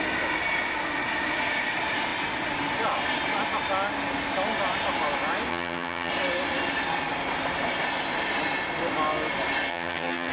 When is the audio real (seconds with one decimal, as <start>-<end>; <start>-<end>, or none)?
0.0-5.5; 6.1-9.7